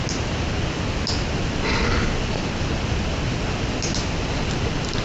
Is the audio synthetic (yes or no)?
no